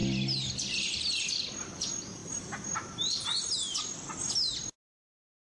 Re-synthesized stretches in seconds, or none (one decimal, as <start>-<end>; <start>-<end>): none